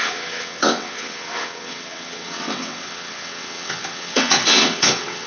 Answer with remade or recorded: remade